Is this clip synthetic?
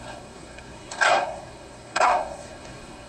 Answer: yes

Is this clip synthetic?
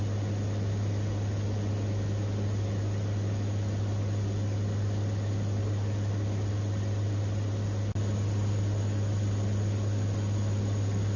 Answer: no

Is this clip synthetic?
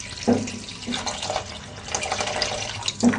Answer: no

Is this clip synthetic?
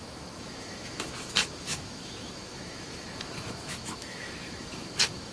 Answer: yes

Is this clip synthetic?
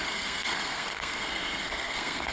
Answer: yes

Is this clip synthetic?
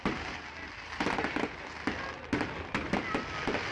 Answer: no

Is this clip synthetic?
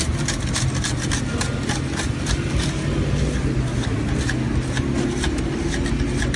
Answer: no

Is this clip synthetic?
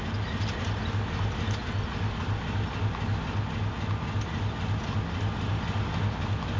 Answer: no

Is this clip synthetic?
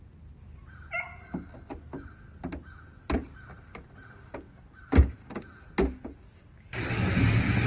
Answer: no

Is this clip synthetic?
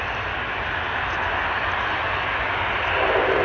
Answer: no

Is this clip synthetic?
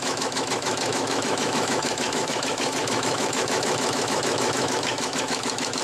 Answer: yes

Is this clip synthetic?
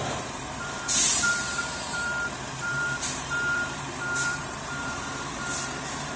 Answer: yes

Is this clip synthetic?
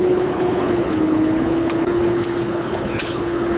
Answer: yes